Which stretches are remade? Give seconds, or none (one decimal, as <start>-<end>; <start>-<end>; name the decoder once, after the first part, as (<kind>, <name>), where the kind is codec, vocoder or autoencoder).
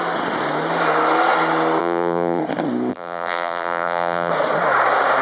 1.8-2.4 (vocoder, BigVGAN v2); 2.9-4.3